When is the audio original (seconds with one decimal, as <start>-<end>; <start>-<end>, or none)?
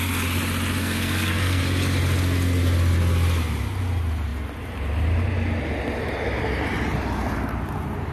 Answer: 0.0-0.8; 1.6-8.1